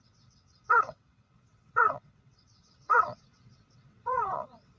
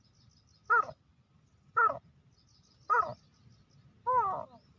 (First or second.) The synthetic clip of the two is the first